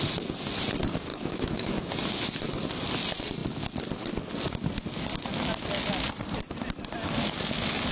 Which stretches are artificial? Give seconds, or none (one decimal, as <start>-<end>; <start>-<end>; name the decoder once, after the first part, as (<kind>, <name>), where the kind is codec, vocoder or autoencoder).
1.1-1.9 (autoencoder, DAC-VAE)